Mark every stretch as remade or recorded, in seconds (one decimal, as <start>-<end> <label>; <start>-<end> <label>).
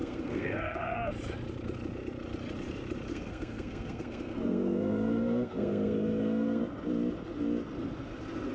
0.0-1.1 remade; 1.1-3.1 recorded; 3.1-6.6 remade; 6.6-8.5 recorded